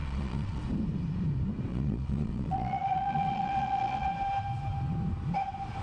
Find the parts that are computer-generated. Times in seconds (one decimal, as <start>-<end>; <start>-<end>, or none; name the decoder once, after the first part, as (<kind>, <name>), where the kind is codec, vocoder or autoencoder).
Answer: 0.0-0.6 (vocoder, Vocos); 1.7-4.1